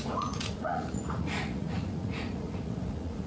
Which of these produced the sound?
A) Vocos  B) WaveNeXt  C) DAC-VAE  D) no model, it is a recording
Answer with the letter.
A